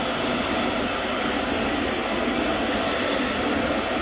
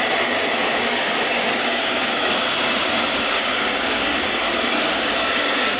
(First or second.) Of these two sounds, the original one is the first